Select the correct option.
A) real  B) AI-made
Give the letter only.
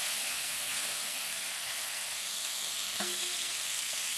B